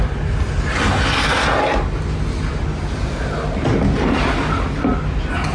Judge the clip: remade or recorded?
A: recorded